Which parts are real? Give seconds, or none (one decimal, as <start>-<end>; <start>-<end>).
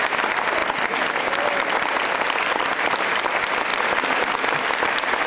0.0-0.6; 2.6-3.7